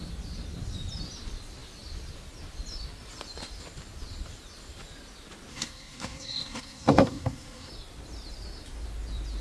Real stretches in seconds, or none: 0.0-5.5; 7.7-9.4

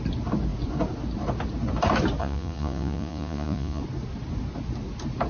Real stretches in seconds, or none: 0.0-2.2; 3.8-5.3

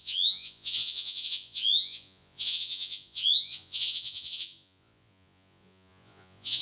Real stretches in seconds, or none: none

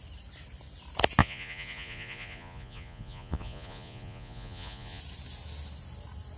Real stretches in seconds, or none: 0.0-1.2; 5.0-6.4

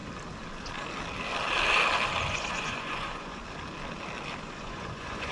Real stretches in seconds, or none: 0.0-2.3; 3.4-4.4

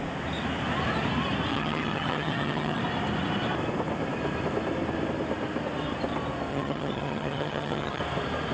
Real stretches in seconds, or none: 0.0-1.5; 2.8-6.5; 8.0-8.5